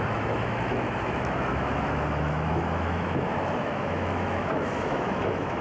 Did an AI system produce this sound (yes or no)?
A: yes